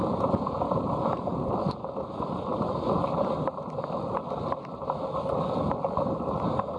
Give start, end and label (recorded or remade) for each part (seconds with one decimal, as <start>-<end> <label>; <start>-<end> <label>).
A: 0.0-1.4 remade; 1.4-6.8 recorded